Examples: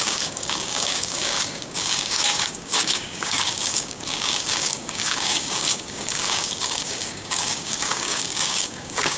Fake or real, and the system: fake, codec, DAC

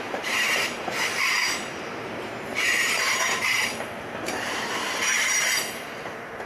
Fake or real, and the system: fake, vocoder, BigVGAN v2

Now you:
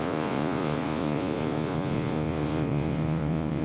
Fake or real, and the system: fake, vocoder, Vocos